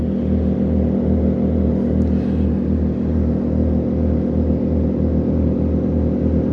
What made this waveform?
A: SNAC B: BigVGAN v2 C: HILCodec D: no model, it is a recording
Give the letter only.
D